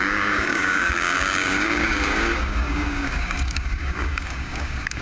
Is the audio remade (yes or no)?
yes